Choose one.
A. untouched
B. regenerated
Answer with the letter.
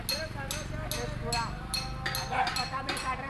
A